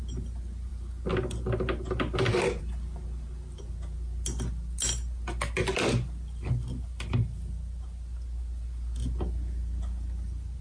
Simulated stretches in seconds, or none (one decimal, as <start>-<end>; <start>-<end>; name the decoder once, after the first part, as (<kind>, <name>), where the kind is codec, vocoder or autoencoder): none